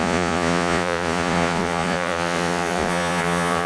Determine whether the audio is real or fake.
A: fake